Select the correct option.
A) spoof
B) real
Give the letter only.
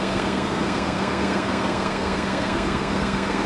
A